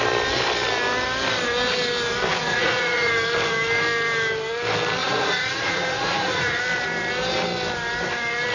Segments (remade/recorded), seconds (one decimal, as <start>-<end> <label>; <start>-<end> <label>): 0.0-2.3 recorded; 2.3-3.1 remade; 3.1-5.0 recorded; 5.0-6.6 remade; 6.6-8.5 recorded